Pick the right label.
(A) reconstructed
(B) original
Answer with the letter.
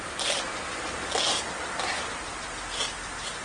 B